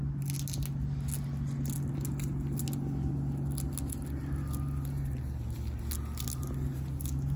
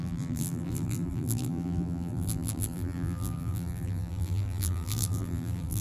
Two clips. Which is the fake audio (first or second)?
second